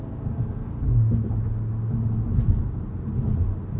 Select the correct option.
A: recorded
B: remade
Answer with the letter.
A